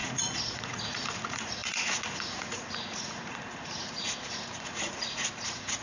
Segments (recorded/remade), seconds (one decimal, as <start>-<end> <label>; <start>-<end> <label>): 0.0-5.8 remade

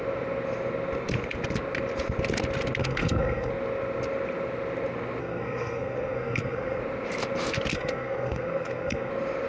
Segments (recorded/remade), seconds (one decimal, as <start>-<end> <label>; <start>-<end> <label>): 0.0-2.8 recorded; 2.8-3.5 remade; 3.5-5.2 recorded; 5.2-6.8 remade; 6.8-7.7 recorded; 7.7-9.1 remade; 9.1-9.5 recorded